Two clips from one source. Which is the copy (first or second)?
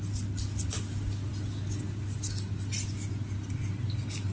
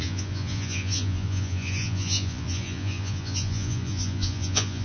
second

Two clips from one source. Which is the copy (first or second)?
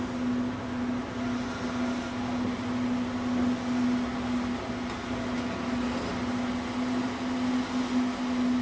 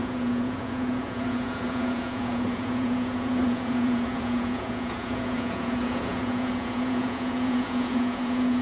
second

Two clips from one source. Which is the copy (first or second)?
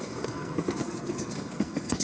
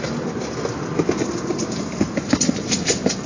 first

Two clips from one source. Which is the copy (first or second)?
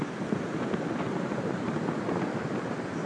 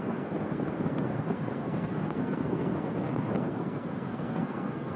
second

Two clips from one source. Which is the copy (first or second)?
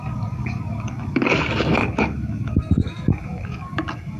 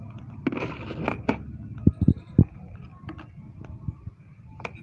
first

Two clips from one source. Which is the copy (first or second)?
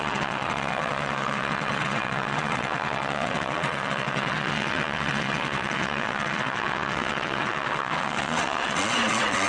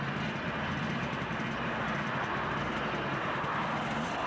first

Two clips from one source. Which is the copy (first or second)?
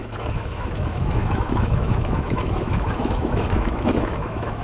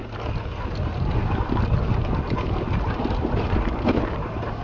first